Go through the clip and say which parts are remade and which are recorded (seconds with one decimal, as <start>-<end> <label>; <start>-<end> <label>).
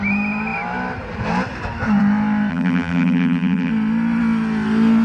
0.0-2.5 recorded; 2.5-3.7 remade; 3.7-5.0 recorded